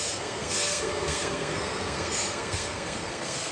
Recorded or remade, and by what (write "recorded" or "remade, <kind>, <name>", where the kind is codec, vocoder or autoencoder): remade, codec, SNAC